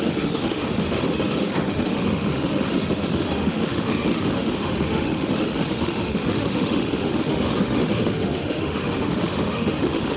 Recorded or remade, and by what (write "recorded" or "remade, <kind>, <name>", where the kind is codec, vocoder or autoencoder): remade, autoencoder, DAC-VAE